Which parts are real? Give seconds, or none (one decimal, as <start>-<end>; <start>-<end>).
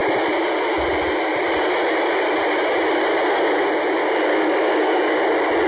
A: 0.0-4.0; 5.2-5.7